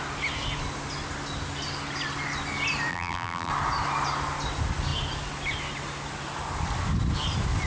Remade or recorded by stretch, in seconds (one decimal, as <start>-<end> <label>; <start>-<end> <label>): 0.0-2.9 recorded; 2.9-3.5 remade; 3.5-7.7 recorded